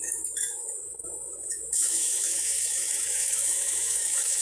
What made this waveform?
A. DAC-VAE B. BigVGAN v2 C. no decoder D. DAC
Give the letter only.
A